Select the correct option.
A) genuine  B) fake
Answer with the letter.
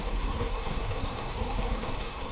B